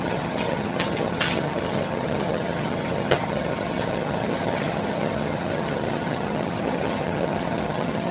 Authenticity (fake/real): fake